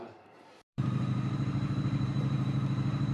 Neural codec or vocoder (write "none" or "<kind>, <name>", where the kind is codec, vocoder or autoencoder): vocoder, BigVGAN v2